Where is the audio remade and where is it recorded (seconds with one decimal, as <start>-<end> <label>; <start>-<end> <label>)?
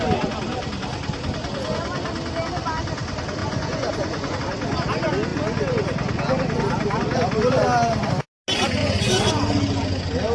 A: 0.0-3.4 recorded; 3.4-4.4 remade; 4.4-8.8 recorded; 8.8-9.3 remade; 9.3-10.3 recorded